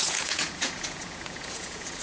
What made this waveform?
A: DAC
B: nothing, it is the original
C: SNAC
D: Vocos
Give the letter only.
D